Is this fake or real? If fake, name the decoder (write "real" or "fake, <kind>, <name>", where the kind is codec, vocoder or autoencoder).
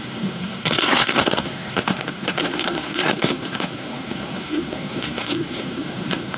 fake, codec, SNAC